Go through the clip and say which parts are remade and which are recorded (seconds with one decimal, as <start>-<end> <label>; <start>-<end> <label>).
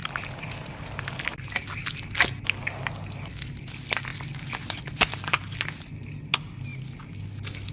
0.0-7.7 recorded